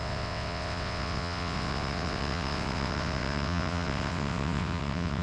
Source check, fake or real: fake